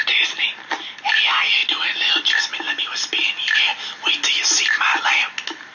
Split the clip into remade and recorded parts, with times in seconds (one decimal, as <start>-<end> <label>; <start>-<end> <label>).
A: 0.0-5.7 recorded